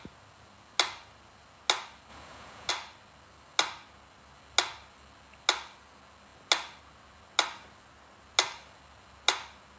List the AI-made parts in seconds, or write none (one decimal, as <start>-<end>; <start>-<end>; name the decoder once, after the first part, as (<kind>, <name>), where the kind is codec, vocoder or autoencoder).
2.1-2.7 (vocoder, Vocos)